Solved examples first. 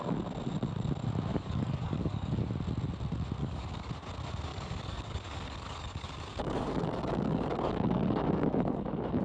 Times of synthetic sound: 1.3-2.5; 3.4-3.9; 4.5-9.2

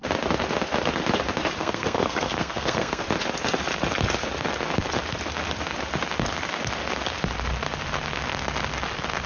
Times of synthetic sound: 1.6-3.0